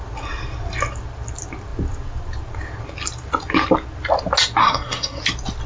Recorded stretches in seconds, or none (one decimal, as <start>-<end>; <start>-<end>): 0.0-4.6; 5.2-5.7